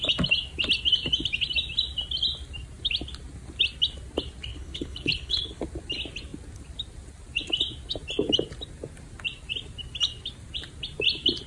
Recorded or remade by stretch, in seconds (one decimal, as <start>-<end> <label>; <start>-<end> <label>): 0.0-4.5 recorded; 4.5-5.6 remade; 5.6-11.5 recorded